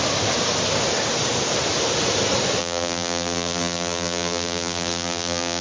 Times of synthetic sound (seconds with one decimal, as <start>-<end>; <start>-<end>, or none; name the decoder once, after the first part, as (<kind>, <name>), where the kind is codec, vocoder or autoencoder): 2.6-5.6 (vocoder, BigVGAN v2)